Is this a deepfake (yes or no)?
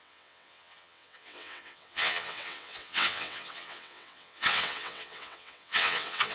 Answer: yes